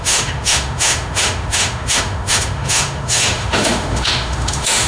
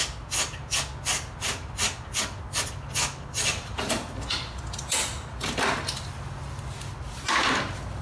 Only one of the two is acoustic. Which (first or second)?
second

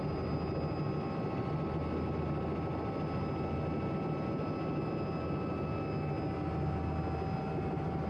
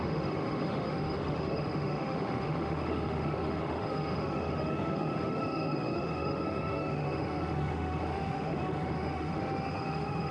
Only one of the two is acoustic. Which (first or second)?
first